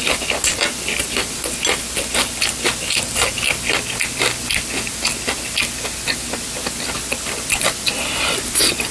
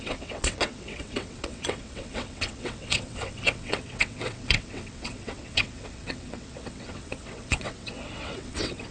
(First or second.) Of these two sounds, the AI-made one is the second